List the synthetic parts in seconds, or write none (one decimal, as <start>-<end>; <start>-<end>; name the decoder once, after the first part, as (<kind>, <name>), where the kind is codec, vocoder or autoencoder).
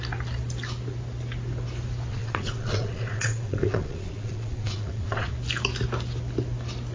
2.1-5.3 (vocoder, Vocos)